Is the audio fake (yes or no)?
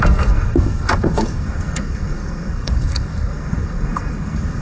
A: yes